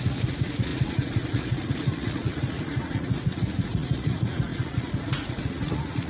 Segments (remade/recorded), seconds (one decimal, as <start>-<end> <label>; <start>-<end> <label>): 0.0-6.1 remade